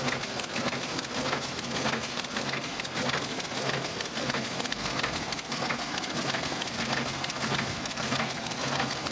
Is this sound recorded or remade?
remade